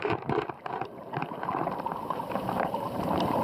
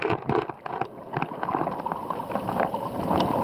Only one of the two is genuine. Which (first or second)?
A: second